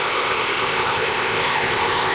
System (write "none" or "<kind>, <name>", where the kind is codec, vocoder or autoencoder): codec, ZipCodec